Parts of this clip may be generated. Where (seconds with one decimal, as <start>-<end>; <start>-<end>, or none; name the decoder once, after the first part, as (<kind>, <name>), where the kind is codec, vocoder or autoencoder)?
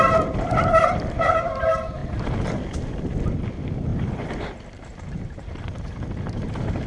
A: 3.9-6.5 (vocoder, BigVGAN v2)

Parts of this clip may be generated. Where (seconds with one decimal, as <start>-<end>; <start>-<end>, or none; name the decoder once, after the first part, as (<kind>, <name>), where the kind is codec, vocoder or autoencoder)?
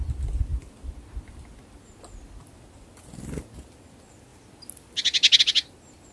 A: none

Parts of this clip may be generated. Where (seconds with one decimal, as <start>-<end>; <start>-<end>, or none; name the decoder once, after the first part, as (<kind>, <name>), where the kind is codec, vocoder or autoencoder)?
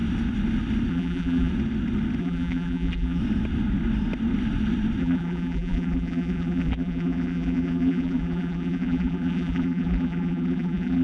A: 0.9-1.5 (vocoder, BigVGAN v2); 2.2-3.2; 5.0-11.0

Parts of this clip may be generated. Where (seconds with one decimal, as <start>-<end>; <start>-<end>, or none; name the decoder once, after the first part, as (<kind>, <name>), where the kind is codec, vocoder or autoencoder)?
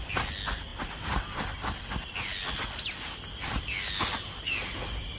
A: none